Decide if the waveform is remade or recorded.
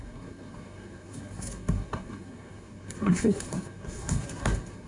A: remade